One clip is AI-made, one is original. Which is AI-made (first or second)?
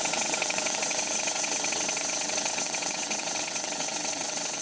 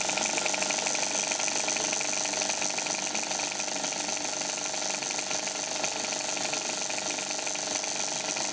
first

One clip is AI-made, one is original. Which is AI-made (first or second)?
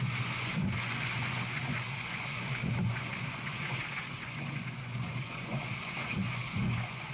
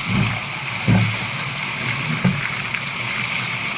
first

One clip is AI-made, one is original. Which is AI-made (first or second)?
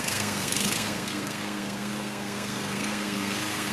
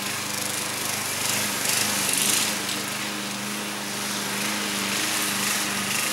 first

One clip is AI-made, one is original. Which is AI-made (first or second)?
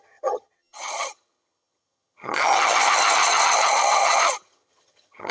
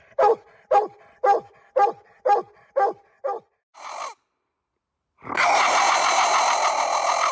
first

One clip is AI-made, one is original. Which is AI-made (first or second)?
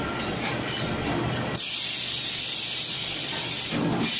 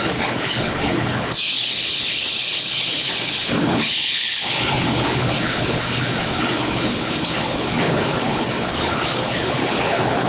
second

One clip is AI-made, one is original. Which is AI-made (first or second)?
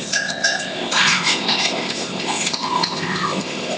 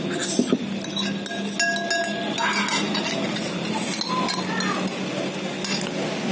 first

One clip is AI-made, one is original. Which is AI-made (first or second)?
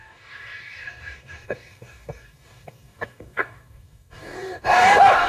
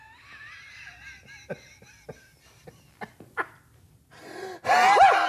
first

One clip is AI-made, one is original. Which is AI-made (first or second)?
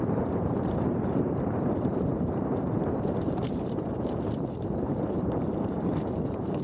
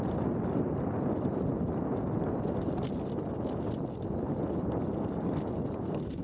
first